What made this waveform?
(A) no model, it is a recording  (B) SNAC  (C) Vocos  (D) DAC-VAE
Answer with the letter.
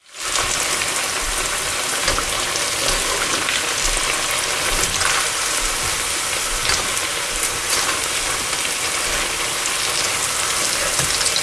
A